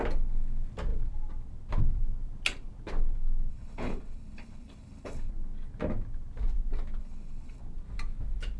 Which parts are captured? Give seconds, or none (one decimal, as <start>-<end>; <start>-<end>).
0.0-3.5; 5.3-7.0; 7.6-8.6